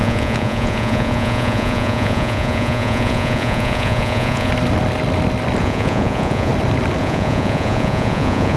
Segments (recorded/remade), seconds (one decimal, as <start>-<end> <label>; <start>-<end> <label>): 0.0-4.5 remade; 4.5-5.6 recorded; 5.6-6.5 remade; 6.5-7.0 recorded; 7.0-8.6 remade